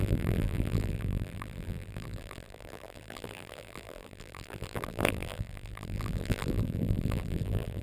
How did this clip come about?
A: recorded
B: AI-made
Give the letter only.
B